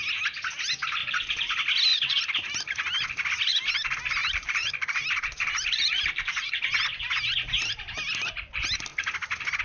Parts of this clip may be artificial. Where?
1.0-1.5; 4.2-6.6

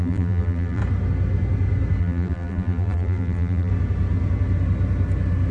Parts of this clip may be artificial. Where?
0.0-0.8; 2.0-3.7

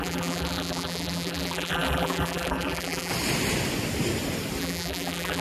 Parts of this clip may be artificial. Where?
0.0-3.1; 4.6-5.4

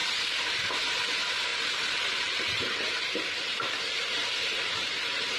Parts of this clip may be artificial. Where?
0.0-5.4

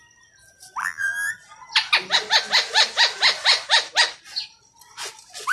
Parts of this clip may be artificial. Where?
0.8-1.3

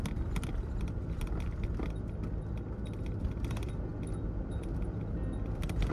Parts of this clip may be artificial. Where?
none

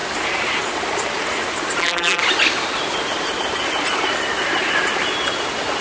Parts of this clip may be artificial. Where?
1.8-2.2